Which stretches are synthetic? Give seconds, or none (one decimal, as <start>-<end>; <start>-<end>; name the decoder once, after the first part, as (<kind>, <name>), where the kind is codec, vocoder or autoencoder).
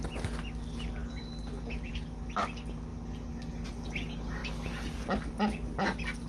none